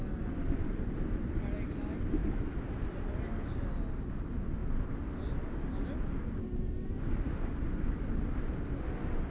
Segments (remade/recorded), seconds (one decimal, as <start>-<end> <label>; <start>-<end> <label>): 0.0-9.3 recorded